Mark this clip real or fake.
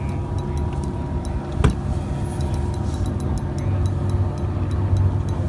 real